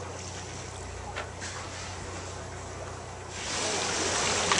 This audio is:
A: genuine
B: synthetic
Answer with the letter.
A